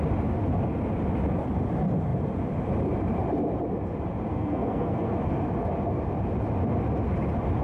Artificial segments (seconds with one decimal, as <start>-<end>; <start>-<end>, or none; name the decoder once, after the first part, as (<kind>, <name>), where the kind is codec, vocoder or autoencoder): 4.3-5.1 (codec, SNAC)